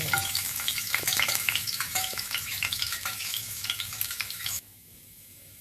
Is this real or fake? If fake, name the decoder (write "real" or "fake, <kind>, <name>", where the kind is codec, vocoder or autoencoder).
fake, autoencoder, DAC-VAE